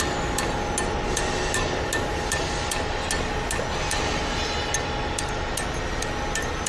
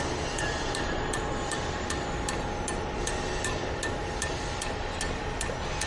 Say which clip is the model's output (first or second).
second